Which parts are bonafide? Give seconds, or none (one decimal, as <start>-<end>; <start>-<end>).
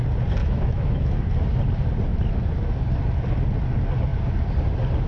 0.0-0.4; 1.2-5.1